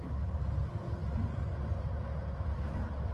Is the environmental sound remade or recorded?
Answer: recorded